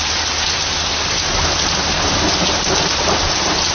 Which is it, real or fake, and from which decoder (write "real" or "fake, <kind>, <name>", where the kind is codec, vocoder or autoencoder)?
real